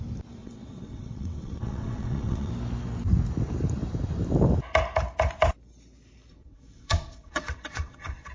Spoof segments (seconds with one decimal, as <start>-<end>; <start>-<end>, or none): 0.4-2.5; 6.3-8.3